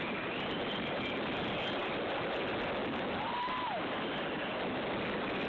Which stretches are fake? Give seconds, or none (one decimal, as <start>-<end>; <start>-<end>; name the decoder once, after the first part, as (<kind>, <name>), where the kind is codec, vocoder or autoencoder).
none